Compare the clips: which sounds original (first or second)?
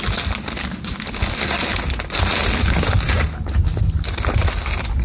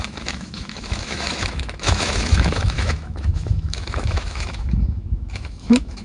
first